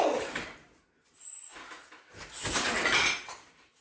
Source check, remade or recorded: recorded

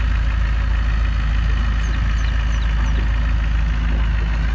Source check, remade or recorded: recorded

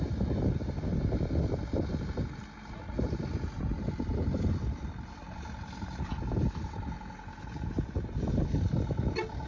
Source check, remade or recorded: recorded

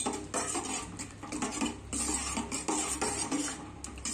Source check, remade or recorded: recorded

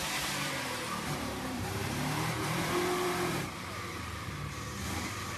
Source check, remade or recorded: remade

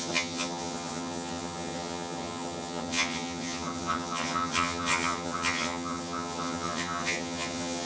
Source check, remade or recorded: remade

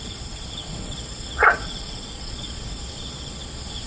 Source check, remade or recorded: remade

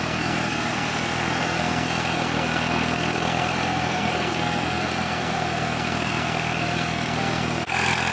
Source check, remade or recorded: remade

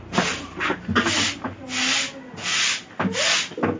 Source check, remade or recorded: recorded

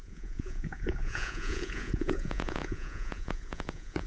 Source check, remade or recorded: remade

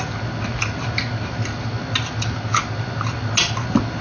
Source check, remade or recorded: recorded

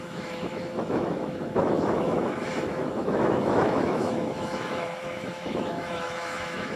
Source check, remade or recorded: remade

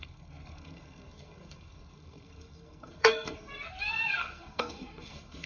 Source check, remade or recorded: remade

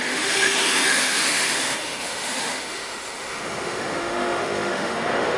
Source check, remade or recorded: remade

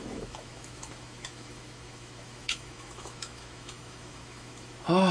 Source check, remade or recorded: remade